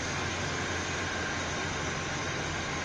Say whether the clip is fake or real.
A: fake